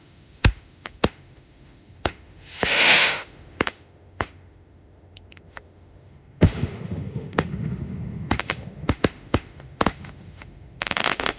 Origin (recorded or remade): remade